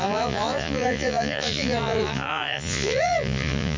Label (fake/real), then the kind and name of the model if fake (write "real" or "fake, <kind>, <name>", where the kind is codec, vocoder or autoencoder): fake, vocoder, Vocos